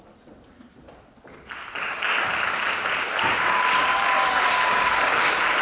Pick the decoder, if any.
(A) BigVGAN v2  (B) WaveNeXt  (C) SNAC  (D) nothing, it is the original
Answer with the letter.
D